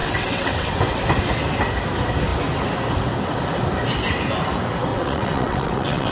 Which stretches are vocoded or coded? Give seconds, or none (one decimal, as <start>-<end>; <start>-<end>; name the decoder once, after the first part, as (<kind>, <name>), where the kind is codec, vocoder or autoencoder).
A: 0.0-1.0 (vocoder, WaveNeXt); 4.9-6.1

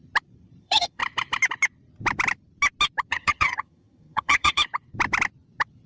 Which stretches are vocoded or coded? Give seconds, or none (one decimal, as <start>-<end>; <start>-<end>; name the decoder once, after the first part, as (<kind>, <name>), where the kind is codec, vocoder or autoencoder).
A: 0.6-1.0 (vocoder, HiFi-GAN); 3.1-4.6

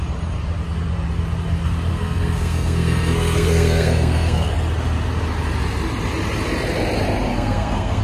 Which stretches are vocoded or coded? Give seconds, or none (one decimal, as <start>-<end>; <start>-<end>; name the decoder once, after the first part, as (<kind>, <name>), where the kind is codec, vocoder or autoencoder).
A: 1.9-4.5 (codec, SNAC); 7.3-8.0

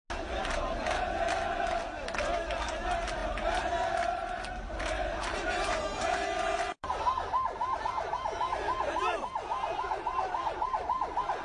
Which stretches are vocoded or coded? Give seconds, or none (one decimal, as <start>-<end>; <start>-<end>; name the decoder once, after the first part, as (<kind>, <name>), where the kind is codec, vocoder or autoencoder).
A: 3.2-7.8 (vocoder, BigVGAN v2)